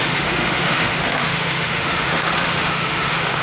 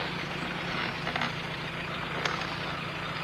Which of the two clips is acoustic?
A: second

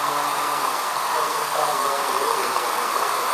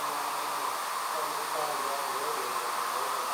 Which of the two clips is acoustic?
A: second